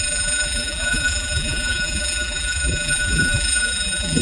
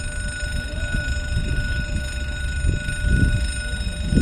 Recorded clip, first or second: second